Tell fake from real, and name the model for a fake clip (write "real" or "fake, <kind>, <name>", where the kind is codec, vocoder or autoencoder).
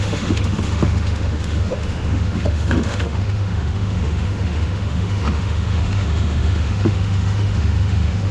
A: fake, autoencoder, DAC-VAE